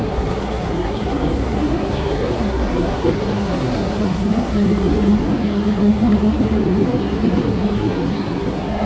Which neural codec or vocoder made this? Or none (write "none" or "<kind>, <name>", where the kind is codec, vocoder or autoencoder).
codec, SNAC